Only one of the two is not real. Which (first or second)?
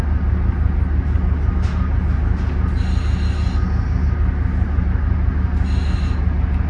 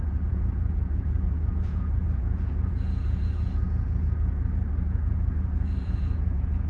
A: second